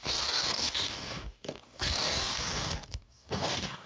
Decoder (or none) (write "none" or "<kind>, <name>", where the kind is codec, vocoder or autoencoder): codec, DAC